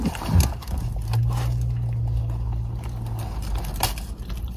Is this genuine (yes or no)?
yes